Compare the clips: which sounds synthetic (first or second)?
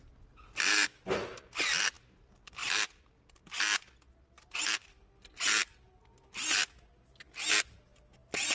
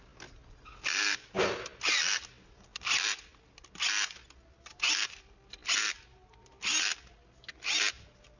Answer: second